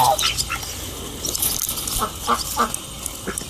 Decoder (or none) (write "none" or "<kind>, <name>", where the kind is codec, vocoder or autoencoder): none